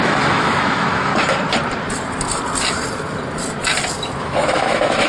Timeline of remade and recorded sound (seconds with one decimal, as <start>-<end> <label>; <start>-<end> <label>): 0.0-1.1 remade; 1.1-4.2 recorded; 4.2-5.1 remade